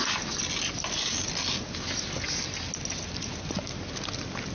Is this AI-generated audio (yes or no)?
no